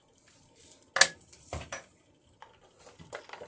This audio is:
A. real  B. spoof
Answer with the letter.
A